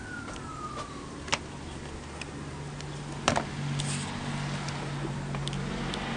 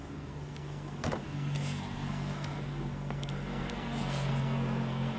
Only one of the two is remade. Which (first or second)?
second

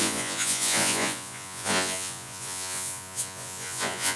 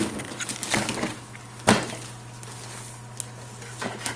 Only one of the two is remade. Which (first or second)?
first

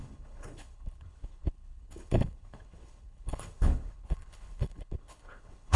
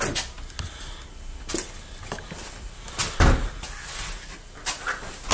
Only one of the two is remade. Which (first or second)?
first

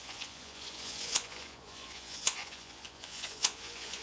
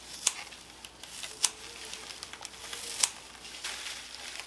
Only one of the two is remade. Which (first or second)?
first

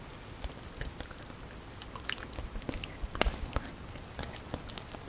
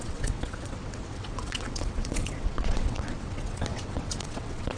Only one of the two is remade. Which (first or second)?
second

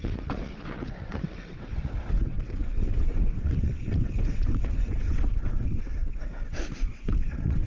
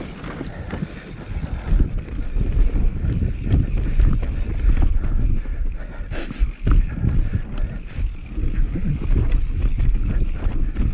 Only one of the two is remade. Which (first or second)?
first